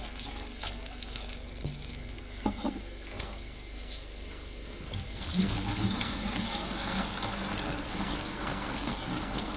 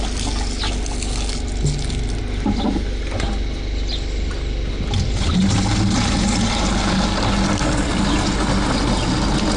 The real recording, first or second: second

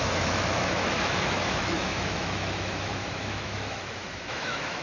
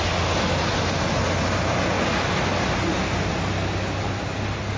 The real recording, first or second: second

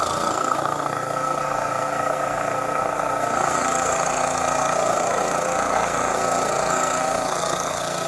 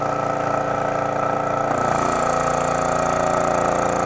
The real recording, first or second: second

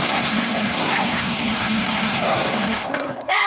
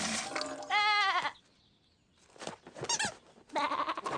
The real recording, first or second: second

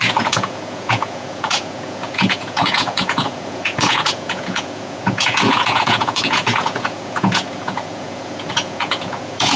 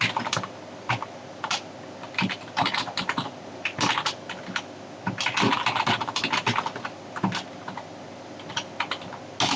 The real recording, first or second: second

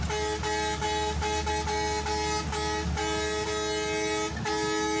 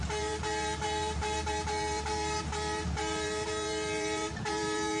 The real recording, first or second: first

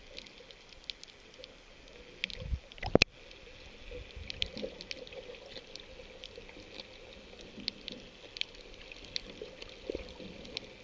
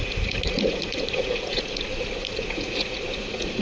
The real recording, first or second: first